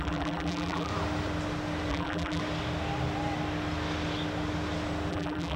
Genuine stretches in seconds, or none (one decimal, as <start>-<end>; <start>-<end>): 0.9-1.9; 2.4-5.1